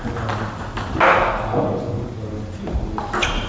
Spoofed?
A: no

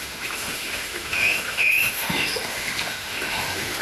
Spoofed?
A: yes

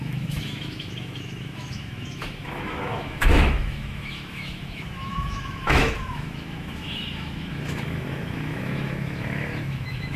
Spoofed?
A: yes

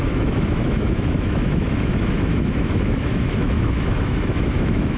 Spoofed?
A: yes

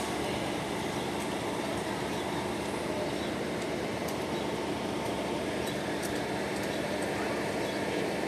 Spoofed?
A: no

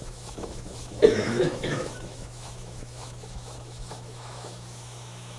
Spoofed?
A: yes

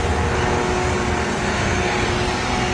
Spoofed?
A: no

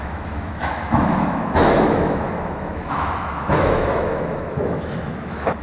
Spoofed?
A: yes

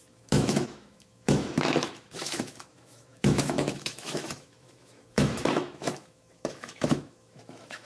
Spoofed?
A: yes